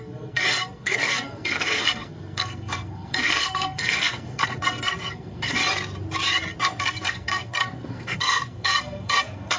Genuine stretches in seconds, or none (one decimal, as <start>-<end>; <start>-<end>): 5.6-6.6